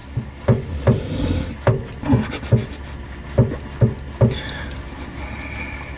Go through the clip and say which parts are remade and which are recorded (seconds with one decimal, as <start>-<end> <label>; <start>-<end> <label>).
0.0-6.0 recorded